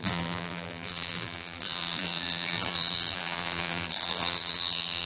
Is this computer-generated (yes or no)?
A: yes